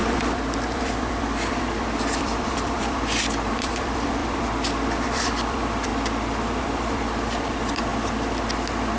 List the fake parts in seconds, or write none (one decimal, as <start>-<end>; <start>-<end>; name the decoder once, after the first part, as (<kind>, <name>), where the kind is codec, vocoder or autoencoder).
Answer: 0.0-5.9 (vocoder, BigVGAN v2); 6.6-7.9